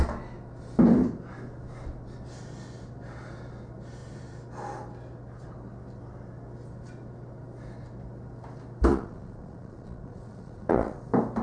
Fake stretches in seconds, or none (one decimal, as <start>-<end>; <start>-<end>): 8.9-11.0